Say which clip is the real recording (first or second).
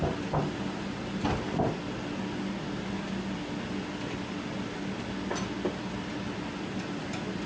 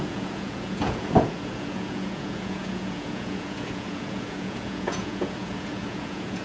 first